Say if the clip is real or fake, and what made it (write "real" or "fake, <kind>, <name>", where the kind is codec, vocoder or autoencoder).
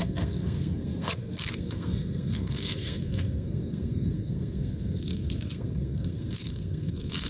fake, codec, SNAC